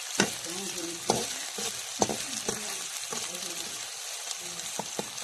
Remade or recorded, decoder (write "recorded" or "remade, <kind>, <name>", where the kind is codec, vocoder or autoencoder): recorded